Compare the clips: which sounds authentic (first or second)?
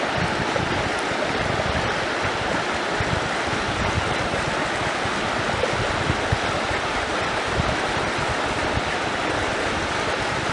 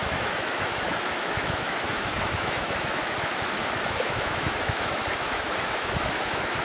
first